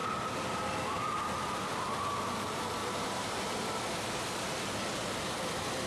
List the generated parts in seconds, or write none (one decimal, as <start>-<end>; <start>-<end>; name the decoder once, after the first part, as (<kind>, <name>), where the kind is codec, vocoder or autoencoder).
2.8-3.4 (vocoder, BigVGAN v2)